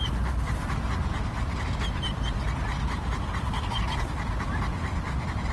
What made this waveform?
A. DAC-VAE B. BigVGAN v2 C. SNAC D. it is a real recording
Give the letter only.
D